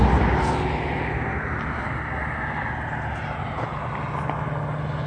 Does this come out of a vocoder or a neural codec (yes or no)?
no